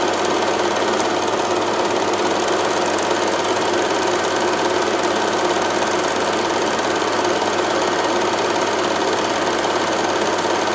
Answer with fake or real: real